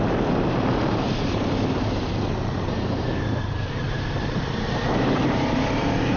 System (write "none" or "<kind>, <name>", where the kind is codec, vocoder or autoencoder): vocoder, BigVGAN v2